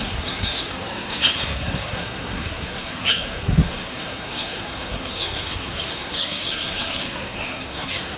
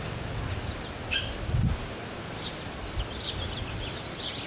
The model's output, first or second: first